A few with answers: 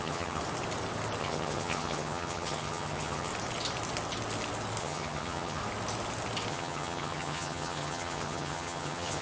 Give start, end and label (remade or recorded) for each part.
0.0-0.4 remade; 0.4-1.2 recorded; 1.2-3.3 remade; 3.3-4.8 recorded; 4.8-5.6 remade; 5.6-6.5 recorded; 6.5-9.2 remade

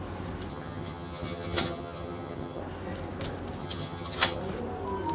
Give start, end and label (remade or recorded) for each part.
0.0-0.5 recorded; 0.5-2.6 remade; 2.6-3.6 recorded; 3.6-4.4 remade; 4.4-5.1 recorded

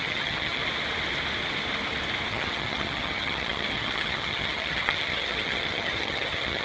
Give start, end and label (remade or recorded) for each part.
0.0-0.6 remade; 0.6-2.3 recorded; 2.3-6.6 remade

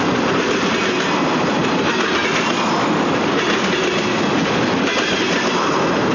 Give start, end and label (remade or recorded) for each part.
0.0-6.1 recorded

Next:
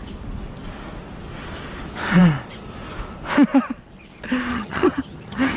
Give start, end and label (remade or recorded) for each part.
0.0-4.5 recorded; 4.5-5.6 remade

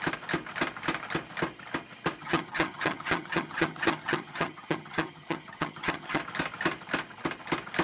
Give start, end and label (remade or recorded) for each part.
0.0-2.2 recorded; 2.2-6.2 remade; 6.2-7.8 recorded